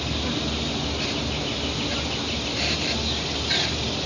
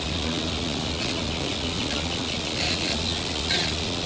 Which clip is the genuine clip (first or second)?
first